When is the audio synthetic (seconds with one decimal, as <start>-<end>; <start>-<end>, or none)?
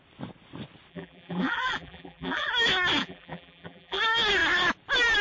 0.9-2.5; 3.0-4.0